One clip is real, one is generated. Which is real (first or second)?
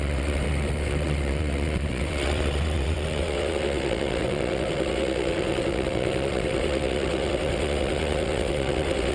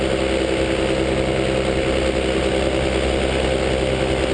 second